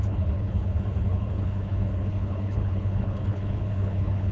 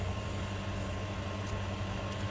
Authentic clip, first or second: second